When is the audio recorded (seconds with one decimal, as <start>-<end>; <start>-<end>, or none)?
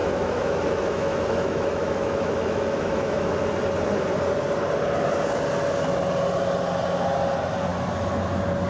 3.4-8.7